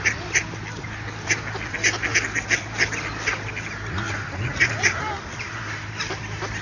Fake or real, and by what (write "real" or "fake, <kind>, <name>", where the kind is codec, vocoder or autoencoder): real